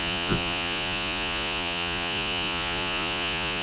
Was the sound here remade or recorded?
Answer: remade